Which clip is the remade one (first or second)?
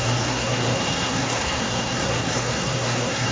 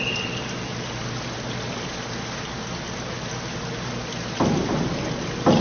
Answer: first